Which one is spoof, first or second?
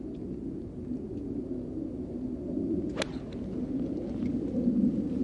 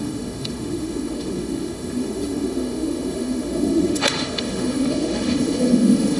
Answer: second